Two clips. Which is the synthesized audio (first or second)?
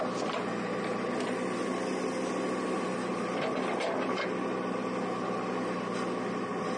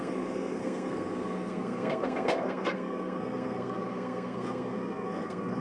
second